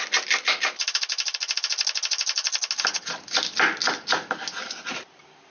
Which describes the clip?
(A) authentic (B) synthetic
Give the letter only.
A